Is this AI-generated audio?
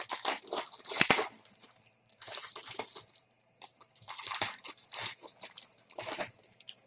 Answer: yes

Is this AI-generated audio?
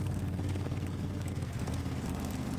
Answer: yes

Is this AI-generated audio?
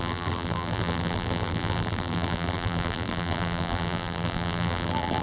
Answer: yes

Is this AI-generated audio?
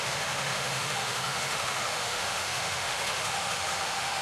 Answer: yes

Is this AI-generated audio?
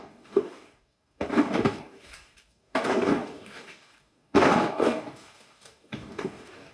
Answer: yes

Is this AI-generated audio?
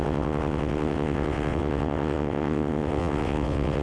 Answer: yes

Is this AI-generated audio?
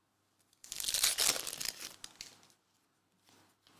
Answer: no